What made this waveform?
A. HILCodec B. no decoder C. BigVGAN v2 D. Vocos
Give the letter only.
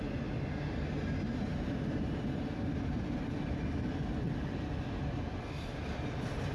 B